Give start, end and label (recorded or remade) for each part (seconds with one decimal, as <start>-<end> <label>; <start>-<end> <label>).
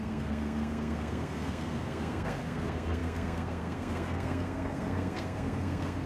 0.0-6.1 remade